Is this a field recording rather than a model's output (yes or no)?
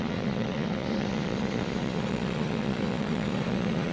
no